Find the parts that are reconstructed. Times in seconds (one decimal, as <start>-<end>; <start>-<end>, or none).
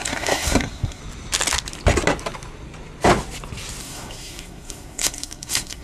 0.0-1.0; 3.8-5.8